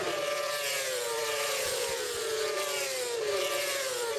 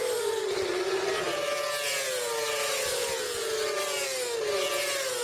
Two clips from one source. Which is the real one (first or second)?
second